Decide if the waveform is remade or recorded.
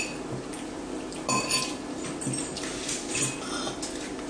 recorded